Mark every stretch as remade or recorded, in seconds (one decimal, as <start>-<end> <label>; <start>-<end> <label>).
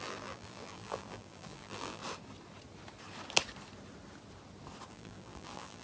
0.0-2.0 remade; 2.0-4.9 recorded; 4.9-5.8 remade